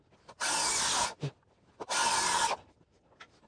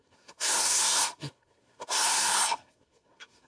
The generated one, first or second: second